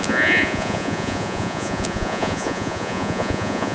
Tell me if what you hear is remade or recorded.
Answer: remade